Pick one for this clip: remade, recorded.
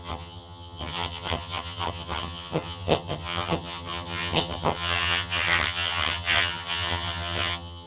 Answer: remade